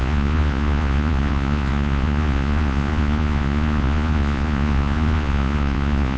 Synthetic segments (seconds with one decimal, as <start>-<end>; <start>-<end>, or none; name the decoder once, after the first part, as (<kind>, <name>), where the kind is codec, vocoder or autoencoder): 0.0-6.2 (vocoder, Vocos)